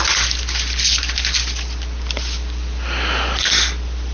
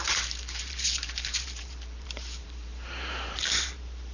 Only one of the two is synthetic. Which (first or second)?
second